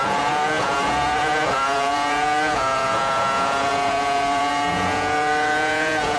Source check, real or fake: fake